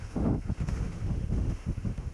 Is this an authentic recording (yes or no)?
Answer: no